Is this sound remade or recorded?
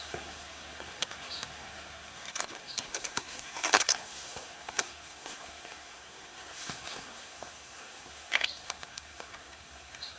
remade